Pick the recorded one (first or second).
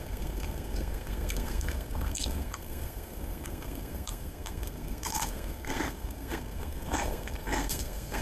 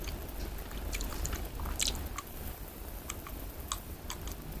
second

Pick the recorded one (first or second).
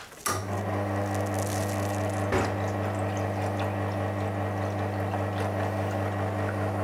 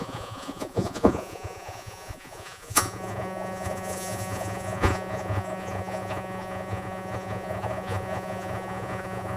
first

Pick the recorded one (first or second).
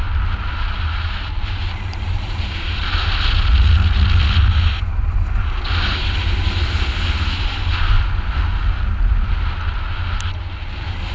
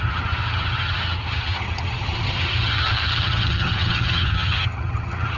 first